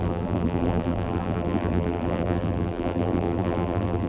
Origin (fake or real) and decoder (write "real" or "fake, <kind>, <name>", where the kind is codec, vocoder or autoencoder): fake, vocoder, BigVGAN v2